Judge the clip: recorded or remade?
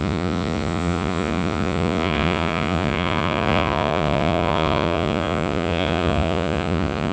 remade